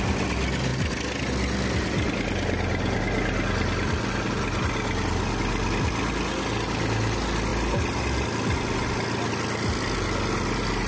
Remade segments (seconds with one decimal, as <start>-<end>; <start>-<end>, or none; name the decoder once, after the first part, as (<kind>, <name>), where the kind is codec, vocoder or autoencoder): none